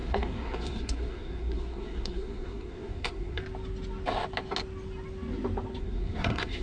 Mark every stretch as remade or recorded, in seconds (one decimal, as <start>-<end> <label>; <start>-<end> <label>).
0.0-3.4 remade; 3.4-5.8 recorded; 5.8-6.6 remade